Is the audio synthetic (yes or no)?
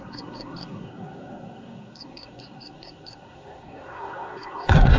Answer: yes